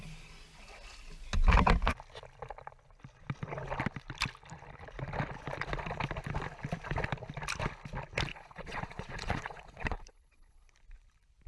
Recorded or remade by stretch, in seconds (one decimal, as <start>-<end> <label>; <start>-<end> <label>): 0.0-8.3 recorded; 8.3-10.7 remade; 10.7-11.5 recorded